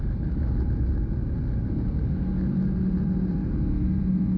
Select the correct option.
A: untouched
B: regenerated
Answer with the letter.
A